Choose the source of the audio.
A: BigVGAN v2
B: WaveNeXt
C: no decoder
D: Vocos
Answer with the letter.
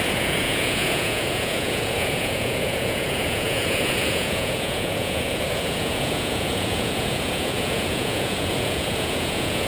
D